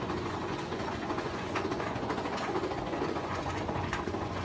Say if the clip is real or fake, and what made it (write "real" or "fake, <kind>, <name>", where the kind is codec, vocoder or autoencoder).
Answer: fake, vocoder, Vocos